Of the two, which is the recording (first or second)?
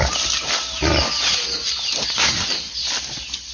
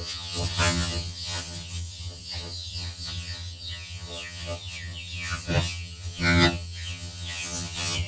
first